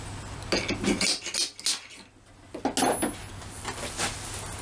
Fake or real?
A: real